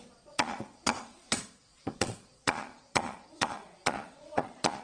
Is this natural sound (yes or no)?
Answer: no